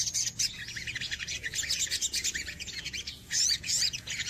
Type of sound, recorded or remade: remade